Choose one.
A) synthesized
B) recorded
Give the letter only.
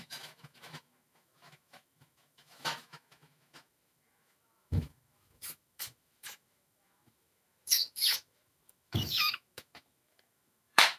A